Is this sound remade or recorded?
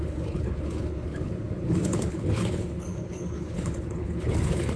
remade